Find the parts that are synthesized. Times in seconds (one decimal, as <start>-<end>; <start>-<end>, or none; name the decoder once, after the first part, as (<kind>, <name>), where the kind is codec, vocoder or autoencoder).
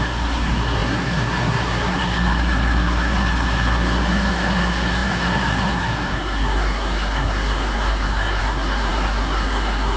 0.0-10.0 (codec, SNAC)